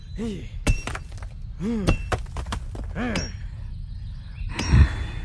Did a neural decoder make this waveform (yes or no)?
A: no